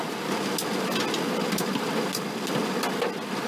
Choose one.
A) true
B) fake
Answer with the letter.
A